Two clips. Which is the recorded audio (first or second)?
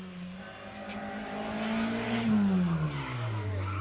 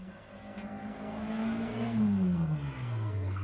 first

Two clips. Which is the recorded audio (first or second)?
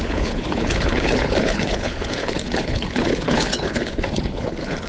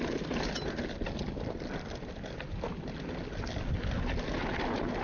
second